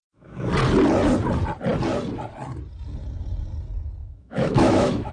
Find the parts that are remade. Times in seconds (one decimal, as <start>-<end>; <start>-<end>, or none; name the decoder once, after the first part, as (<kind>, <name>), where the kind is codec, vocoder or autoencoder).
0.0-0.5 (autoencoder, DAC-VAE); 4.0-5.1